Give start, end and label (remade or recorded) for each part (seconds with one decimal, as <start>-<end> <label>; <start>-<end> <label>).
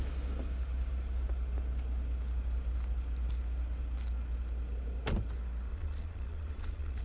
0.0-5.7 recorded; 5.7-7.0 remade